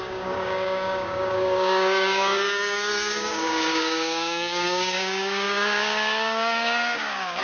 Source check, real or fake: fake